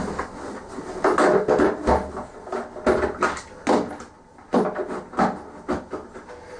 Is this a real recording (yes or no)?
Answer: yes